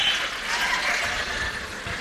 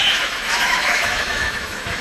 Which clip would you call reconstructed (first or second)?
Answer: second